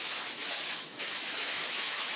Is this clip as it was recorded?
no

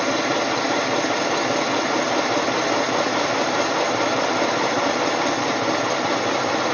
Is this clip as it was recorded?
yes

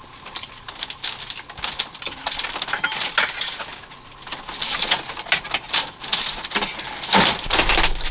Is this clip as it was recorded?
yes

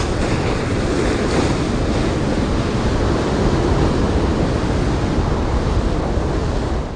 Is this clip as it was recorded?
yes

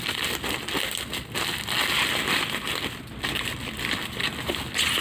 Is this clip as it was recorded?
yes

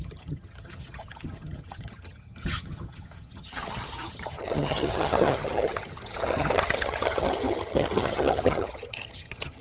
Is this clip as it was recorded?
no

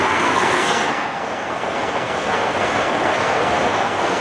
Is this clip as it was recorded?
no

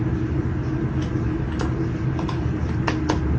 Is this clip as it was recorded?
yes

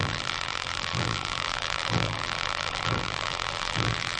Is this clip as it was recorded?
no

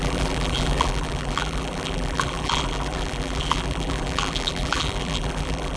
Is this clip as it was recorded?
no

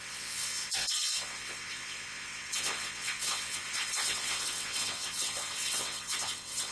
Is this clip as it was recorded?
no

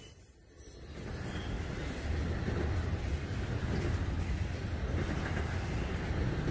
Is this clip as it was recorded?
yes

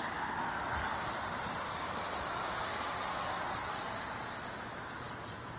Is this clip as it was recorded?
yes